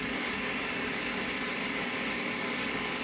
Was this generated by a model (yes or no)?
yes